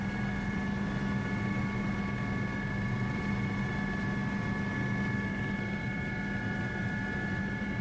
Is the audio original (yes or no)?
yes